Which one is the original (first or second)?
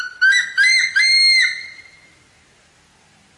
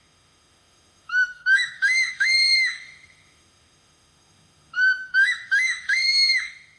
first